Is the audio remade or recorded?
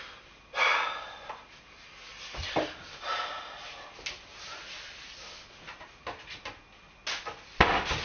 recorded